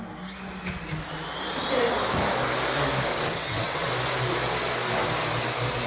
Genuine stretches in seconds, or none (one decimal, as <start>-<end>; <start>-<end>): 0.0-3.1; 3.9-5.9